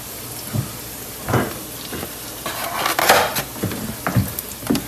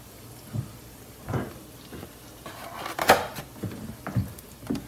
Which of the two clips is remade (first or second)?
second